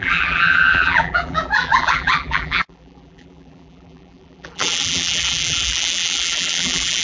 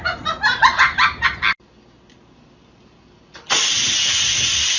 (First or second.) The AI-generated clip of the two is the first